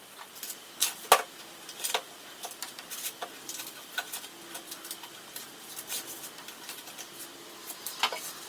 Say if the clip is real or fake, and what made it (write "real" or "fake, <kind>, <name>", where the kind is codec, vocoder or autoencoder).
real